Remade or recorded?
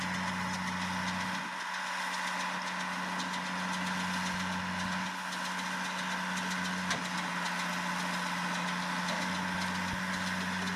recorded